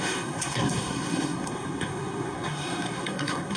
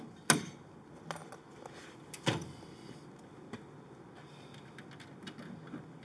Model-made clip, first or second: first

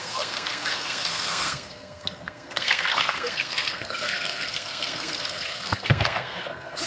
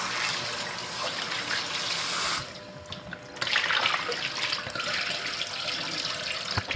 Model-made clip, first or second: first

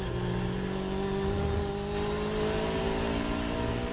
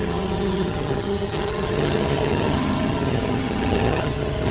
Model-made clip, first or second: second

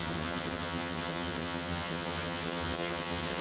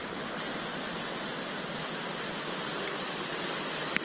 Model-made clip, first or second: first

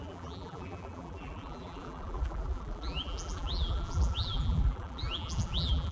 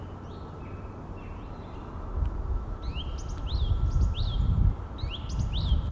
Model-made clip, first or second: first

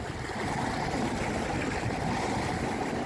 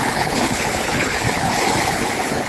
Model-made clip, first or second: second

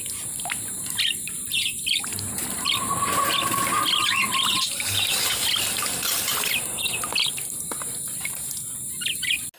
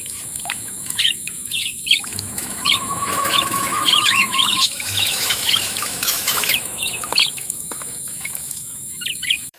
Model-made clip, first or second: second